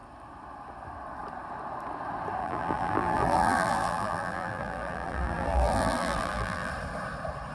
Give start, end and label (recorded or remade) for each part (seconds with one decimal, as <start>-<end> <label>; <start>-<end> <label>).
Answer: 0.0-2.4 recorded; 2.4-6.7 remade; 6.7-7.5 recorded

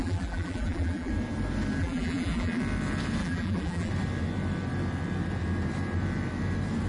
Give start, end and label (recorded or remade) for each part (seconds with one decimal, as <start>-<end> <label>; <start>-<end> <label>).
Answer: 0.0-1.1 remade; 1.1-1.8 recorded; 1.8-2.6 remade; 2.6-3.2 recorded; 3.2-3.9 remade; 3.9-6.9 recorded

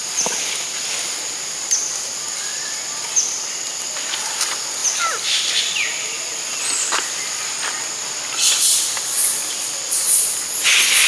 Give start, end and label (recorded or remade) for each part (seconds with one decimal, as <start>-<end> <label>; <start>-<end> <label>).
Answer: 0.0-4.8 recorded; 4.8-7.5 remade; 7.5-11.1 recorded

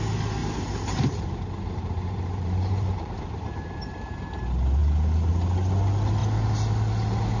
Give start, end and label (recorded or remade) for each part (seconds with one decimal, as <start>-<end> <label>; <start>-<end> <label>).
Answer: 0.0-0.4 recorded; 0.4-4.2 remade; 4.2-7.4 recorded

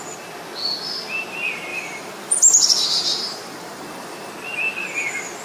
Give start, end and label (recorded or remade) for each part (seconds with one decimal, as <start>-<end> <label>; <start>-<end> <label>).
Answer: 0.0-1.7 recorded; 1.7-4.3 remade; 4.3-5.4 recorded

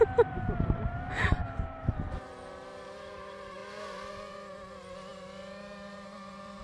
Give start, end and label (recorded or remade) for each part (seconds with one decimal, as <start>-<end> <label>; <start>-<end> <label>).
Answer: 0.0-3.6 remade; 3.6-4.3 recorded; 4.3-6.6 remade

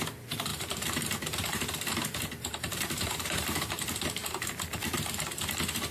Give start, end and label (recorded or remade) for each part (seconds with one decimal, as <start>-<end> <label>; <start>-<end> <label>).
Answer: 0.0-0.5 recorded; 0.5-3.7 remade; 3.7-5.9 recorded